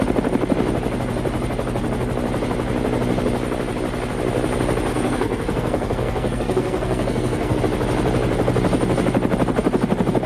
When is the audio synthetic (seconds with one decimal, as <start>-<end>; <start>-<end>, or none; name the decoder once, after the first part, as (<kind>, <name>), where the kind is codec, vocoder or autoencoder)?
4.9-7.6 (codec, SNAC)